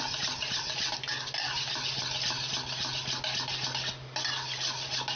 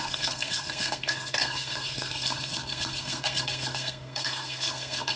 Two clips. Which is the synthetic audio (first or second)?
second